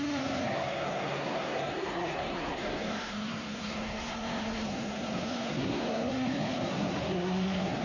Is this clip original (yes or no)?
no